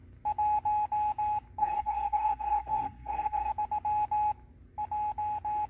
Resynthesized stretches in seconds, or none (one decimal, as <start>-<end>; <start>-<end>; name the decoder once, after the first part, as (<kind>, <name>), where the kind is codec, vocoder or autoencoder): 1.6-3.5 (codec, SNAC)